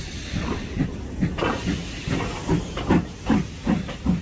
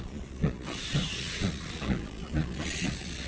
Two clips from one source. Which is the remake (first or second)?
second